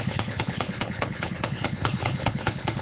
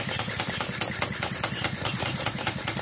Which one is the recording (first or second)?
second